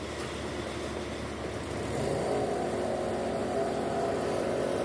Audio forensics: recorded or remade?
recorded